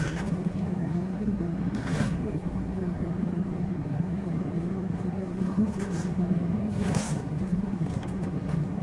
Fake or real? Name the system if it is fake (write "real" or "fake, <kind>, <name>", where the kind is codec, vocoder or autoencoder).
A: fake, codec, SNAC